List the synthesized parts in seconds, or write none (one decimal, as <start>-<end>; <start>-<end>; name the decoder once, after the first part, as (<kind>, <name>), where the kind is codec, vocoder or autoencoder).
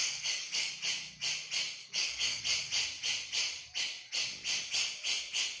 0.0-0.7 (codec, DAC); 1.8-2.4